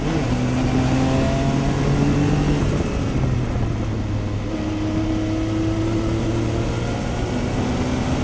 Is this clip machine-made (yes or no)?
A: no